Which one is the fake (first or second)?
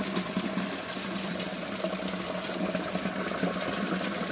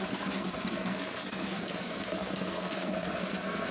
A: second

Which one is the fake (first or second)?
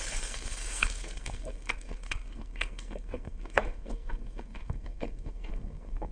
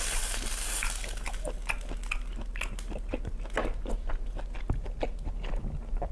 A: first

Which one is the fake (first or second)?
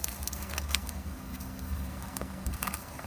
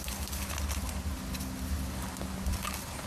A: first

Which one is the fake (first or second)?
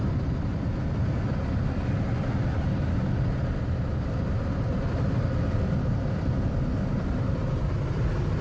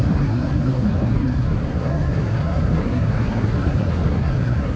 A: second